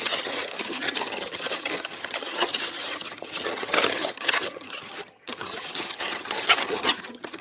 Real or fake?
fake